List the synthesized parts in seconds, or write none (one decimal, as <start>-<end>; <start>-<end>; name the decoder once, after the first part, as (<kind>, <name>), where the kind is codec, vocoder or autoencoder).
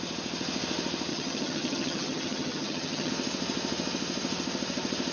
1.1-3.1 (vocoder, HiFi-GAN)